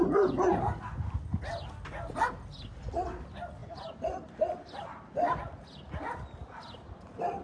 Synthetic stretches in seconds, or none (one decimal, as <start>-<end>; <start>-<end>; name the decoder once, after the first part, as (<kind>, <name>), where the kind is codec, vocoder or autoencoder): none